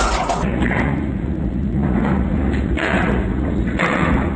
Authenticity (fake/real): fake